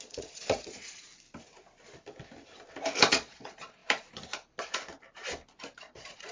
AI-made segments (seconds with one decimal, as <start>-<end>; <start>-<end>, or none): 0.0-1.1; 3.1-3.8; 5.8-6.3